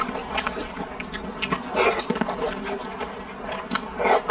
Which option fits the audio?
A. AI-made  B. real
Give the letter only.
B